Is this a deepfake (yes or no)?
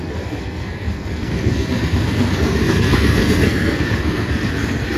yes